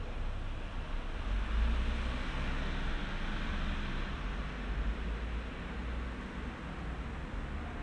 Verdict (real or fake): real